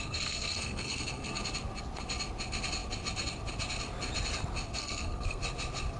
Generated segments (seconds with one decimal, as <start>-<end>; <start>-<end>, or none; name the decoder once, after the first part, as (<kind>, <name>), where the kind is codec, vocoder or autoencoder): 0.0-1.4 (codec, SNAC); 4.8-5.4